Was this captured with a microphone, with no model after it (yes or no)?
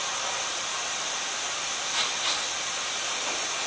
yes